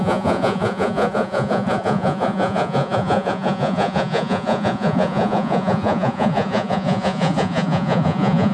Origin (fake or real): fake